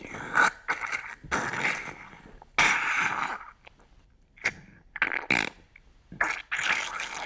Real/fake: real